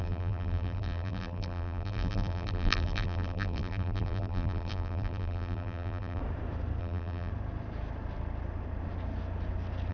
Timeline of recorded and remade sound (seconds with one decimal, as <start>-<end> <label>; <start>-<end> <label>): 0.0-6.2 remade; 6.2-6.8 recorded; 6.8-7.3 remade; 7.3-9.9 recorded